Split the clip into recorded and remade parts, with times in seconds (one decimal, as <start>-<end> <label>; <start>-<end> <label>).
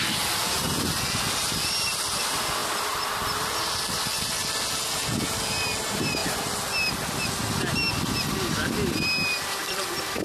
0.0-10.2 recorded